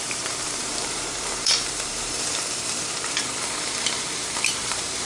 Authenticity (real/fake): fake